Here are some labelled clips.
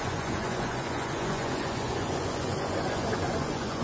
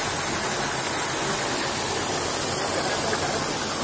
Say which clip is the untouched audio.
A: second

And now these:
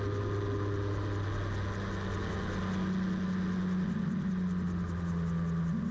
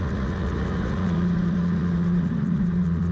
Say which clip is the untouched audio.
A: first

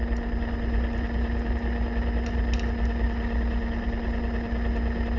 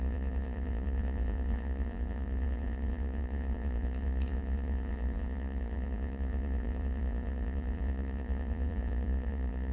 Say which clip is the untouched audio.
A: first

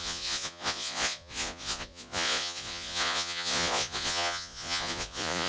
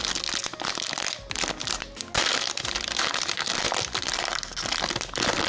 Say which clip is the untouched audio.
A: second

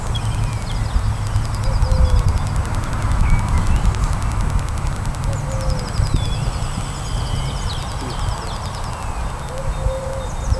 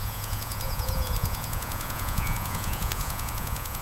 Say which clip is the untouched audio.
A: first